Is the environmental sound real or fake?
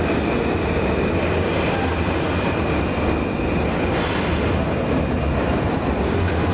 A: real